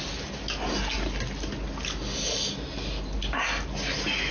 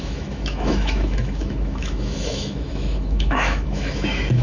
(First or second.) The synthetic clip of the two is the second